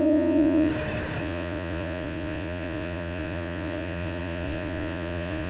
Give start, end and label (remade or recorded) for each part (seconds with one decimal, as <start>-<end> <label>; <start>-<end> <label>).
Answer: 0.0-0.7 remade; 0.7-1.2 recorded; 1.2-5.5 remade